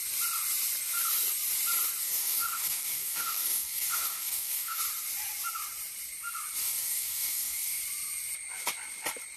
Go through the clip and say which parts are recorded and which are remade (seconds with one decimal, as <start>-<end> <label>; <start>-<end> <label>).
0.0-2.0 recorded; 2.0-4.8 remade; 4.8-6.6 recorded; 6.6-7.8 remade; 7.8-9.4 recorded

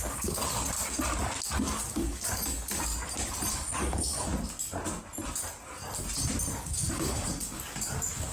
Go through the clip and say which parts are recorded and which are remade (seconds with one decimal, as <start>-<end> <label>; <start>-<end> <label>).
0.0-0.4 remade; 0.4-1.9 recorded; 1.9-2.9 remade; 2.9-3.5 recorded; 3.5-4.3 remade; 4.3-6.5 recorded; 6.5-8.3 remade